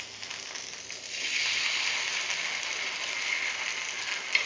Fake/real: real